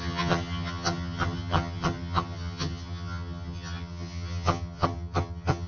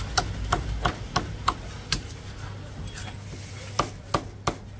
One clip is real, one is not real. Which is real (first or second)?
second